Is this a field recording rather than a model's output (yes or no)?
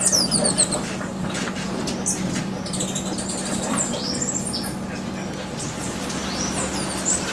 yes